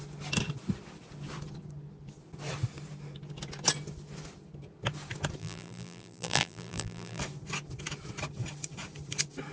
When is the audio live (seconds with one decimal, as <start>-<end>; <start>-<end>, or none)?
0.0-5.4; 7.2-9.5

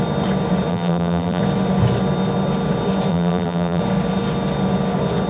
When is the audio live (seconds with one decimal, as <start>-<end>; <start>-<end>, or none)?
0.0-0.7; 1.4-3.1; 3.8-5.3

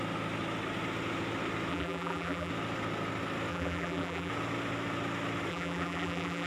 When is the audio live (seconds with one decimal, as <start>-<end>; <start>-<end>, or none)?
0.0-1.7; 2.5-3.5; 4.3-5.5

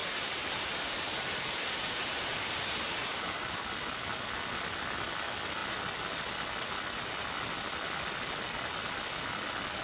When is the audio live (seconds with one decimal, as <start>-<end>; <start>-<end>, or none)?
3.6-9.8

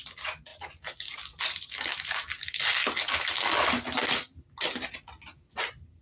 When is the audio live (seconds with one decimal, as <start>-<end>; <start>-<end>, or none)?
0.0-6.0

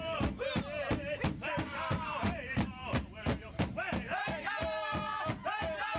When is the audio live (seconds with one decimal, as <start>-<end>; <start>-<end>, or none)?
2.8-3.4; 4.1-6.0

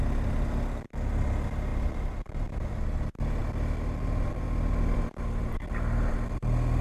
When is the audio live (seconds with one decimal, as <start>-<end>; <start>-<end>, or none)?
0.0-6.8

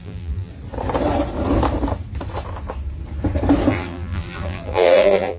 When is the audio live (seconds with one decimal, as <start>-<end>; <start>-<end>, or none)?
0.5-3.7